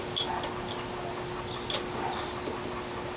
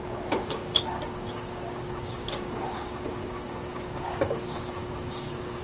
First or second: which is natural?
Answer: first